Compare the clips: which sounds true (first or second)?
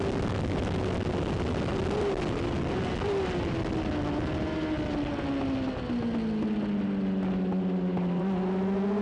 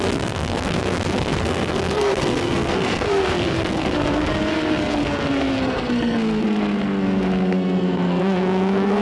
first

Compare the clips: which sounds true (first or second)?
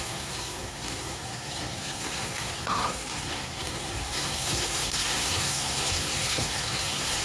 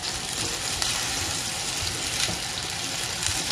second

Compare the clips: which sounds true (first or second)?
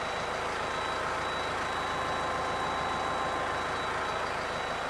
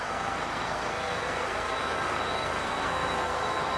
first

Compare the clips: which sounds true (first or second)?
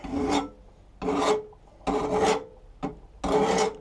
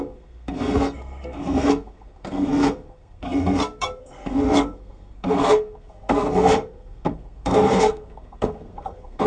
first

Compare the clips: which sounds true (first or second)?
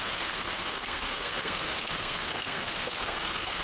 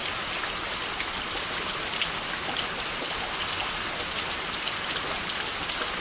second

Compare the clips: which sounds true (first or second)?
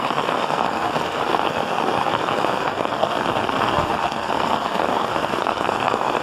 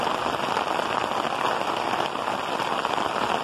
second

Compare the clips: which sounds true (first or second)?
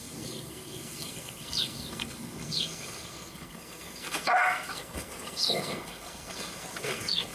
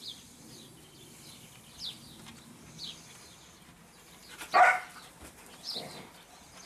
second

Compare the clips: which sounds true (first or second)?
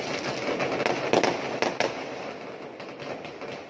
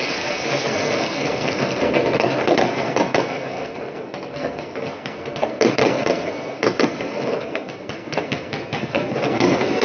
first